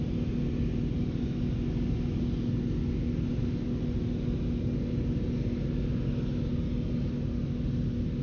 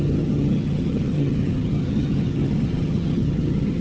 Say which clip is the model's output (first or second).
second